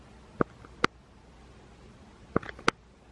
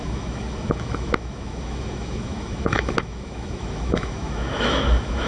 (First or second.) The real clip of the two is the first